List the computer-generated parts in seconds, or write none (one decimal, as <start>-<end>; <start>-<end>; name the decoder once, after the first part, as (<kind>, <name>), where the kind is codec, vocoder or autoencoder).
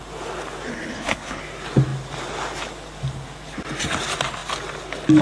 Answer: 0.7-1.4 (codec, HILCodec)